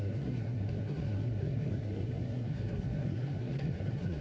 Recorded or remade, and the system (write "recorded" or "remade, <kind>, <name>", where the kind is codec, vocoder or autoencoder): remade, codec, SNAC